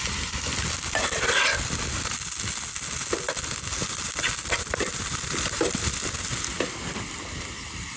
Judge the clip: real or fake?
real